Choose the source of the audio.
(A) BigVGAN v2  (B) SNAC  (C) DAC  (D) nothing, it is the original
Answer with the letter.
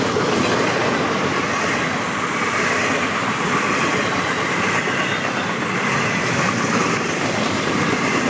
A